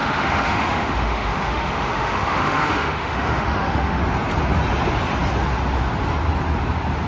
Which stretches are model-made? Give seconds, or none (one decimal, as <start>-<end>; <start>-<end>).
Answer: 0.0-4.0

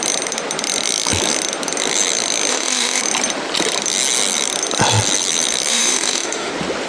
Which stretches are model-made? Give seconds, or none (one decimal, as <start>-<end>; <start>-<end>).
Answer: 2.5-3.0; 5.7-6.5